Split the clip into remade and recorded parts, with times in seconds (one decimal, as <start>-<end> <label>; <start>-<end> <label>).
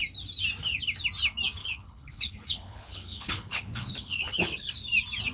0.0-1.6 recorded; 1.6-4.7 remade; 4.7-5.3 recorded